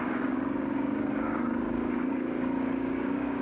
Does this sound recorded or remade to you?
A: remade